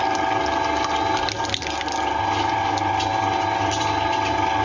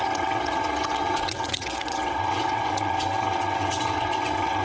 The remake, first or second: second